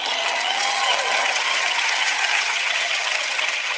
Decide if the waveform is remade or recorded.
remade